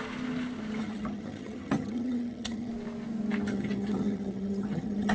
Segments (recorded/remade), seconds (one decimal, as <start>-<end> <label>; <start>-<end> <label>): 0.0-0.8 recorded; 0.8-2.7 remade; 2.7-3.5 recorded; 3.5-5.1 remade